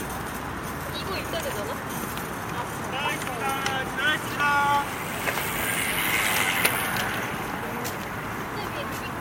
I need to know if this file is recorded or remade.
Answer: recorded